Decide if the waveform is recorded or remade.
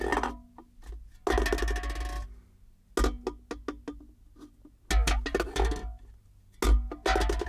recorded